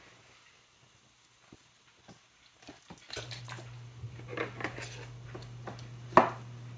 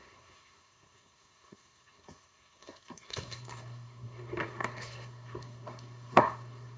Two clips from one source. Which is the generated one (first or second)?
second